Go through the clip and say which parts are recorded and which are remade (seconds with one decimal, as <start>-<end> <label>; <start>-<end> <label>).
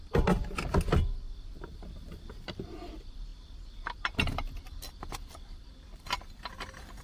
0.0-7.0 recorded